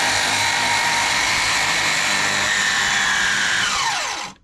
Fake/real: fake